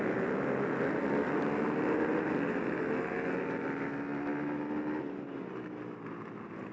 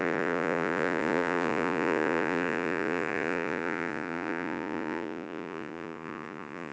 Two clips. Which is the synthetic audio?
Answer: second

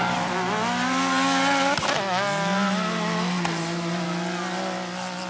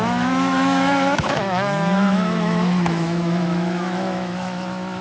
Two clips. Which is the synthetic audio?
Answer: second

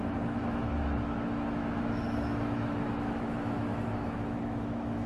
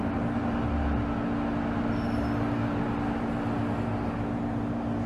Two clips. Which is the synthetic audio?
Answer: first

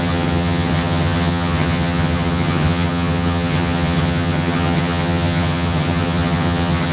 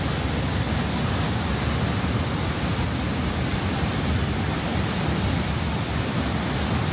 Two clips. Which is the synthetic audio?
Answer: first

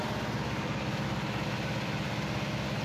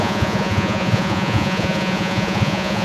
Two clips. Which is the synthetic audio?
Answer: second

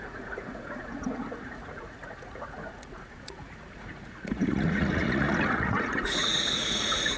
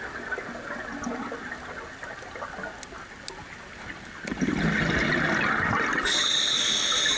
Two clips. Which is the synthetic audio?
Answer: first